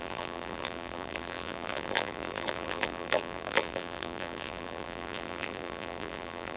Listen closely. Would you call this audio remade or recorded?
remade